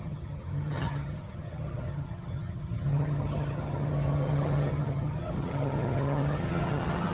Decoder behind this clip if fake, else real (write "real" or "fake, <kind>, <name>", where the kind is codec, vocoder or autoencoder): fake, vocoder, HiFi-GAN